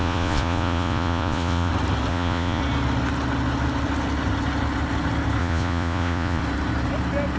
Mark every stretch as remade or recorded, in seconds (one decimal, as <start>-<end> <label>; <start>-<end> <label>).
0.0-1.7 remade; 1.7-2.1 recorded; 2.1-2.6 remade; 2.6-5.4 recorded; 5.4-6.4 remade; 6.4-7.4 recorded